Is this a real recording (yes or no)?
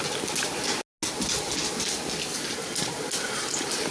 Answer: yes